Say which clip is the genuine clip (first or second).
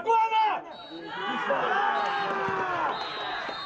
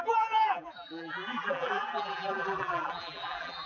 first